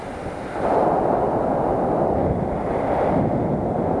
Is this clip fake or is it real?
real